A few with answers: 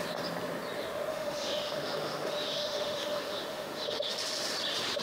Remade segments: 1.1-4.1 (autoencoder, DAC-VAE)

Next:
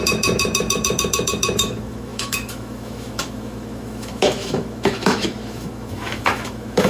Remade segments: 0.0-6.9 (autoencoder, DAC-VAE)